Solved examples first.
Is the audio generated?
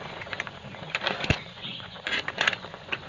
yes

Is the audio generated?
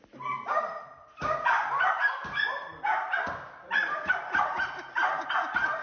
no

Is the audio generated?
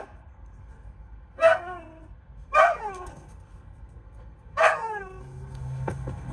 yes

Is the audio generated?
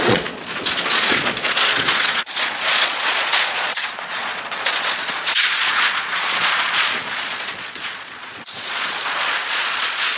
yes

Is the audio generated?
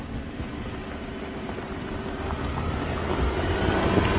no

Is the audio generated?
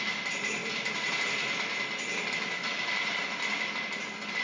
no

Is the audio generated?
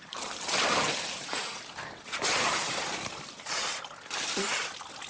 no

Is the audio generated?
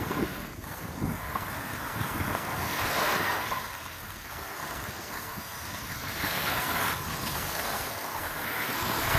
yes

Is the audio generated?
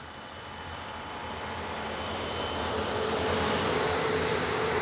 no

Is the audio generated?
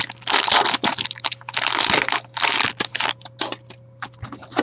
no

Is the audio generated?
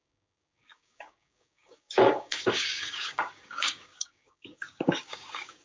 yes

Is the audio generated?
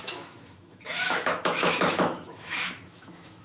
yes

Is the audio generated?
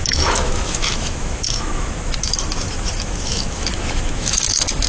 yes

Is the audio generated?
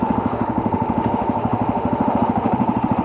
yes